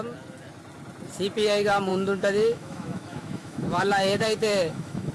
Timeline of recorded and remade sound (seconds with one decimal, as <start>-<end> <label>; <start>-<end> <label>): 0.0-1.9 recorded; 1.9-5.1 remade